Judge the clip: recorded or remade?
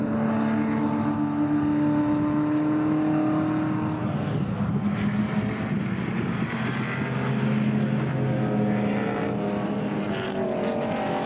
recorded